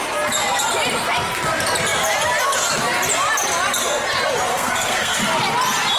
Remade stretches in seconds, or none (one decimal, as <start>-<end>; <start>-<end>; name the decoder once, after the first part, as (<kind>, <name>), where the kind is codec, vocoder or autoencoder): 4.5-5.2 (codec, SNAC)